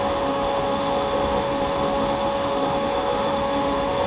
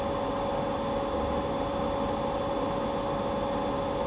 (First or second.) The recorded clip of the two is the second